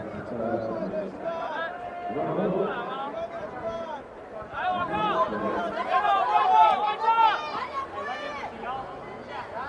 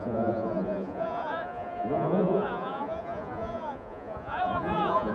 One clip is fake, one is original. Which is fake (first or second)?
second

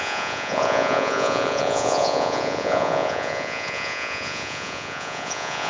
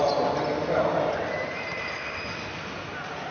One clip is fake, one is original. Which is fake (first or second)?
first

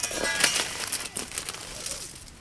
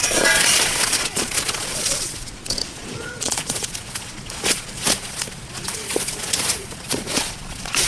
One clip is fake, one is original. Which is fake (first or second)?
second